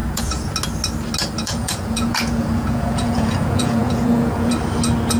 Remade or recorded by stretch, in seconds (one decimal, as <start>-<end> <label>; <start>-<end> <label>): 0.0-0.5 remade; 0.5-1.4 recorded; 1.4-4.5 remade; 4.5-5.2 recorded